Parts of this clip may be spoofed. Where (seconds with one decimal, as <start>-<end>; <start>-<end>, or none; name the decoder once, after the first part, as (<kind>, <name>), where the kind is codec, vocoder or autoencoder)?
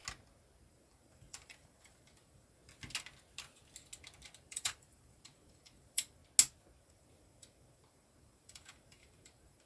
0.7-2.6 (vocoder, BigVGAN v2); 4.4-6.2; 6.8-9.7